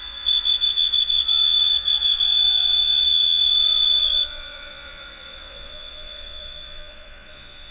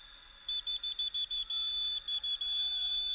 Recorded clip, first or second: second